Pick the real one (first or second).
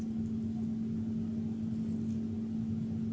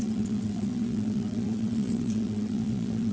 first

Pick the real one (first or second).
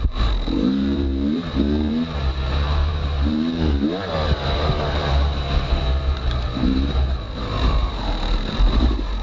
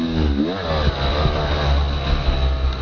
second